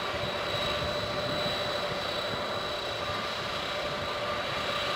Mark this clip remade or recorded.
recorded